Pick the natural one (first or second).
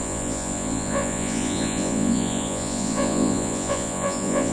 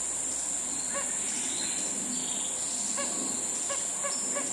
second